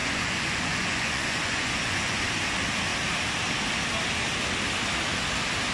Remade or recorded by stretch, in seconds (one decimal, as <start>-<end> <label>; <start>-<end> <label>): 0.0-2.3 remade; 2.3-5.7 recorded

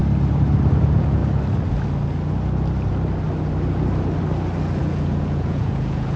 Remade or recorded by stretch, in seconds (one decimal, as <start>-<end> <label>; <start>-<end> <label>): 0.0-0.7 recorded; 0.7-1.2 remade; 1.2-4.8 recorded; 4.8-6.2 remade